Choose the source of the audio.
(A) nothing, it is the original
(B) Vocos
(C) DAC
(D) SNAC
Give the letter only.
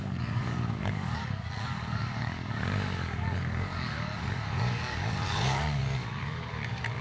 C